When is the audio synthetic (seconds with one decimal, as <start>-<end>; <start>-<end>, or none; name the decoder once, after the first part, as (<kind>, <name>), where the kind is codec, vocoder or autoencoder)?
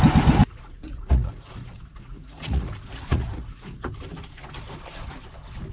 0.4-2.7 (vocoder, Vocos); 3.1-3.9